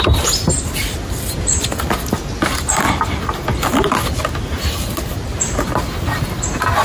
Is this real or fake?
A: real